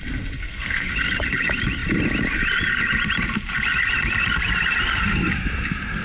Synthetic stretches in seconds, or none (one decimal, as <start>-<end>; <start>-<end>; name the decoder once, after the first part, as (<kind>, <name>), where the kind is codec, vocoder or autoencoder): 0.4-0.9 (codec, SNAC)